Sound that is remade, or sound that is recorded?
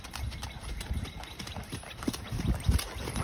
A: recorded